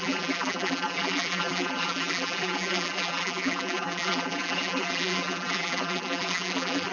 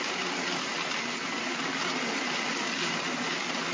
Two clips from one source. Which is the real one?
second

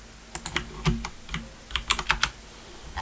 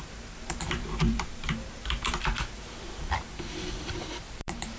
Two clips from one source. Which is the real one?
first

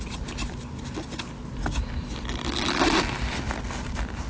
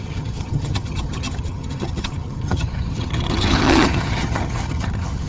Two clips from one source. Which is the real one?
first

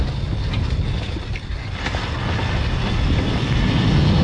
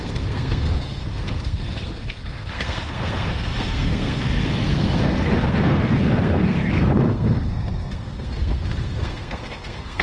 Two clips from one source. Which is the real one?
first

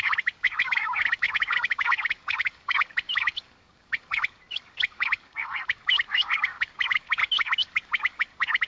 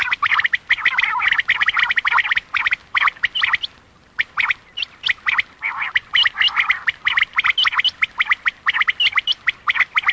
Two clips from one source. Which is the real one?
second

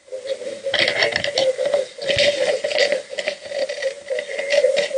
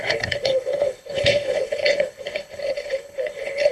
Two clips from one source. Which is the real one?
first